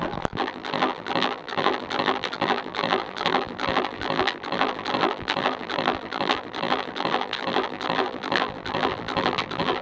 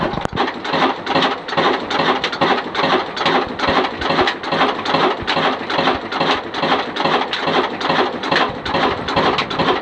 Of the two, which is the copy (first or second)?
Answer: first